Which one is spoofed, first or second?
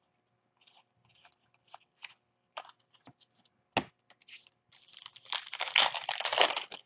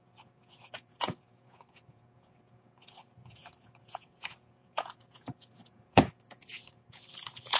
second